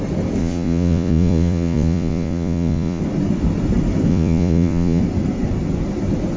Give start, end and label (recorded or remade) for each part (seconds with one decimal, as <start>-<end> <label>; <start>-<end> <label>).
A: 0.0-0.4 recorded; 0.4-3.0 remade; 3.0-4.1 recorded; 4.1-5.0 remade; 5.0-6.4 recorded